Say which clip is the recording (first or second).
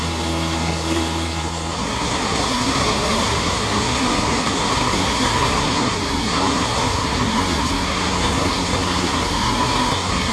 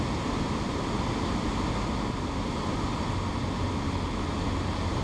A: second